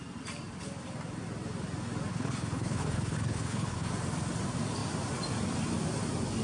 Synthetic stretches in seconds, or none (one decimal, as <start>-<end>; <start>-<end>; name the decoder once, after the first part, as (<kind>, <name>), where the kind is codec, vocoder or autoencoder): 2.1-3.9 (codec, HILCodec)